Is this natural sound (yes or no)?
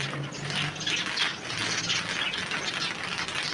yes